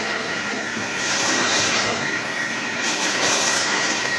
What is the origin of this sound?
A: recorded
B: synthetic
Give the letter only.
B